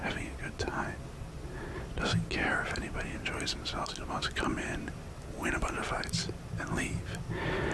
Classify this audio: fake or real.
real